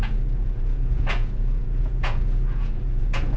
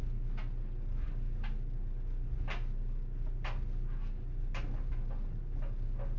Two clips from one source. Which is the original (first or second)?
second